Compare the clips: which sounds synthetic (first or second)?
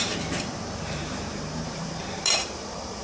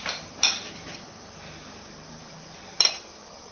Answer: first